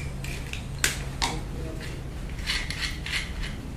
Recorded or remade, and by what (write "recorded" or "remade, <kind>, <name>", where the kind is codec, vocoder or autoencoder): recorded